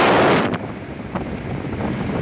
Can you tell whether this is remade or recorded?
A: recorded